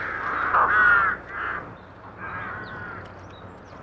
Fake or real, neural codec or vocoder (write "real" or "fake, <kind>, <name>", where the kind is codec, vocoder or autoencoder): real